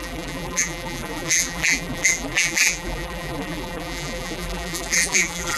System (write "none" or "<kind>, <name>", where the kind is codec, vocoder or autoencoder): vocoder, BigVGAN v2